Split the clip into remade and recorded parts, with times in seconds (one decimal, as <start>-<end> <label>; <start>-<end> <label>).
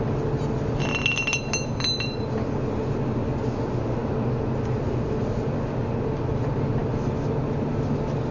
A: 0.0-8.3 recorded